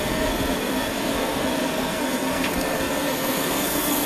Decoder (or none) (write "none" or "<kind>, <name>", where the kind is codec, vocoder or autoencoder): codec, SNAC